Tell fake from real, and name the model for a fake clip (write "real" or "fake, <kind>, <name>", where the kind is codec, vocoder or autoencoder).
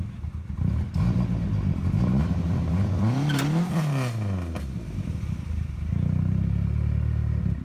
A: real